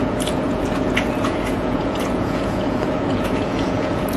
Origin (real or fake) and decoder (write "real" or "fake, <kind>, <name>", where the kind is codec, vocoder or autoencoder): fake, vocoder, Vocos